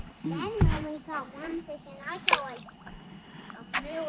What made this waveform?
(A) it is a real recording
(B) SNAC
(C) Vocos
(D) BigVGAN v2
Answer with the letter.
D